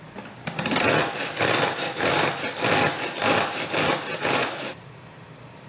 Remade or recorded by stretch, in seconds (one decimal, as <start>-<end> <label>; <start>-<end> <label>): 0.0-4.4 recorded; 4.4-5.0 remade; 5.0-5.7 recorded